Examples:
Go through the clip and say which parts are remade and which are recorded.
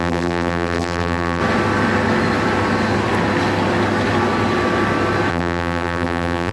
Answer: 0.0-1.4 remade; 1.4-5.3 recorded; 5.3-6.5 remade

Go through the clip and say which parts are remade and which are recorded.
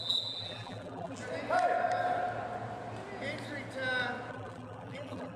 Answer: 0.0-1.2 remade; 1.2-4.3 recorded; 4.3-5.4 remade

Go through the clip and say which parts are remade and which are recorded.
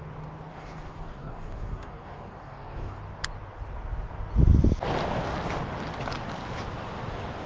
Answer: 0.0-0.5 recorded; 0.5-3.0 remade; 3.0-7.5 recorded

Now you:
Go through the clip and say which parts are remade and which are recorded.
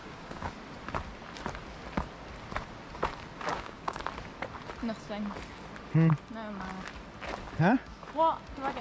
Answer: 0.0-0.5 remade; 0.5-3.5 recorded; 3.5-4.0 remade; 4.0-8.8 recorded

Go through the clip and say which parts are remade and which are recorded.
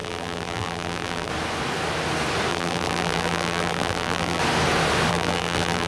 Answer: 0.0-1.3 remade; 1.3-2.5 recorded; 2.5-4.4 remade; 4.4-5.1 recorded; 5.1-5.9 remade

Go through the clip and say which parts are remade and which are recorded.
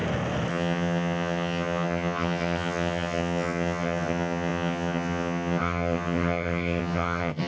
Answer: 0.0-0.5 recorded; 0.5-7.5 remade